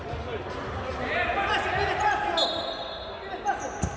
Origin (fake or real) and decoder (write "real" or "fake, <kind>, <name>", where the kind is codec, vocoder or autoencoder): real